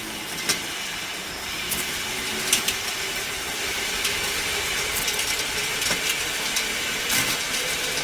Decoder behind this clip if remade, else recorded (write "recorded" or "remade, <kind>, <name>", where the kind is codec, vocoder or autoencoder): remade, vocoder, BigVGAN v2